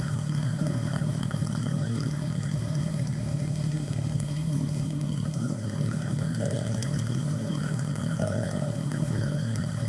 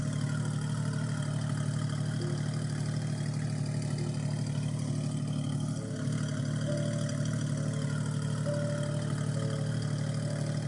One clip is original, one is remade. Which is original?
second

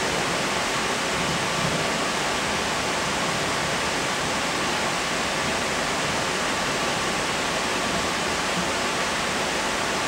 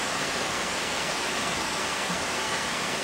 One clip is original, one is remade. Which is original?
first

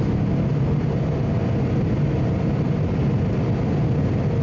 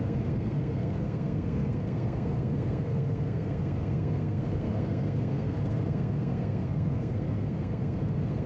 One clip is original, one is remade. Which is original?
first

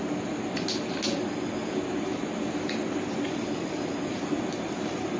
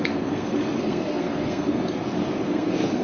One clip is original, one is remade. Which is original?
first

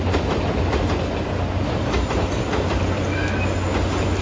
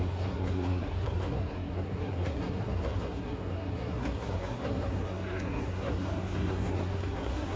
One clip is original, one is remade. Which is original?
first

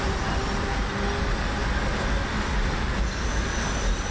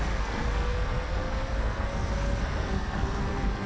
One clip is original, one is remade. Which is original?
first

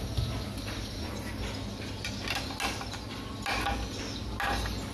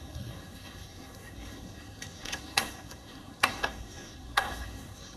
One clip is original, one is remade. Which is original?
first